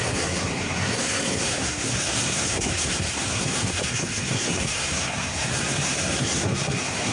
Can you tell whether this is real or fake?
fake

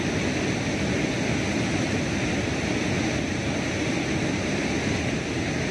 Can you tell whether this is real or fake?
real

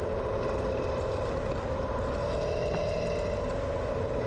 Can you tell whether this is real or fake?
real